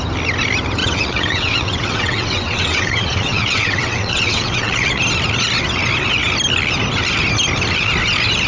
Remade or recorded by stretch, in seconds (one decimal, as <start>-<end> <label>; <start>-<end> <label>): 0.0-0.8 recorded; 0.8-5.0 remade; 5.0-8.5 recorded